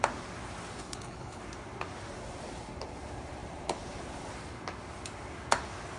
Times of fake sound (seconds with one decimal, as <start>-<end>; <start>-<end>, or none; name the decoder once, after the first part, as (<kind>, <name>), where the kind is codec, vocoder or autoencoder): 0.8-1.4 (codec, HILCodec)